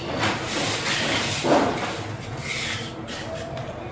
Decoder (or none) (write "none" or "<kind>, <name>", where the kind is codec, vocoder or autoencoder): none